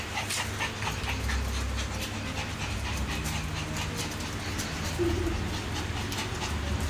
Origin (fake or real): real